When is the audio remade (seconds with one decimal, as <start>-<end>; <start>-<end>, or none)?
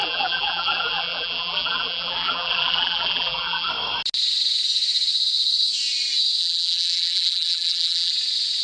0.0-3.7; 6.4-8.1